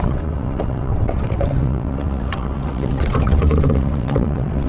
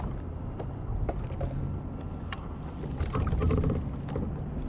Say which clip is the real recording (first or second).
second